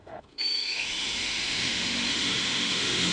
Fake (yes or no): yes